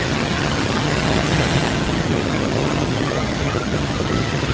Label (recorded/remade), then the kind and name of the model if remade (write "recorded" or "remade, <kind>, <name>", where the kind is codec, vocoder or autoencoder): remade, vocoder, HiFi-GAN